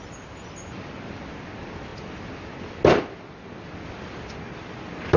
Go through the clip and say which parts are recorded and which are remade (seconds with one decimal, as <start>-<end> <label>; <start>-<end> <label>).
0.0-5.2 recorded